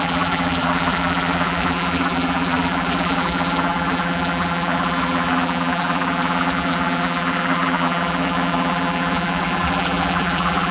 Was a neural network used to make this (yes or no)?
yes